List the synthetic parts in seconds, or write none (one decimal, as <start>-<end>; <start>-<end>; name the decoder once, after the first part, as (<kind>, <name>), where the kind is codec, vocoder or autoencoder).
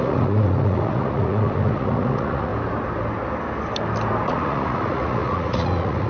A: 0.0-2.5 (vocoder, Vocos); 4.3-6.1